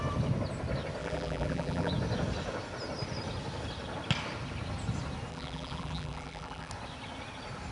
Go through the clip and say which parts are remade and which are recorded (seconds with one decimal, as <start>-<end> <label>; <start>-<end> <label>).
0.0-1.0 recorded; 1.0-1.9 remade; 1.9-5.3 recorded; 5.3-6.7 remade; 6.7-7.7 recorded